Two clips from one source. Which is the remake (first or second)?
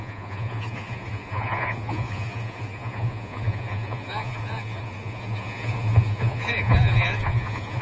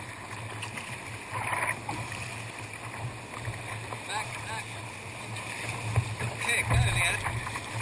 first